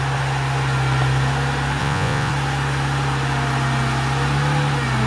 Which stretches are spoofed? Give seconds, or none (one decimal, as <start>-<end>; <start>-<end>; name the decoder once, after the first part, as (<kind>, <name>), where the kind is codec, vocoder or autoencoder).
1.8-2.3 (vocoder, Vocos)